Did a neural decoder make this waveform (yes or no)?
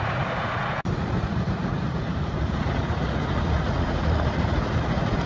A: yes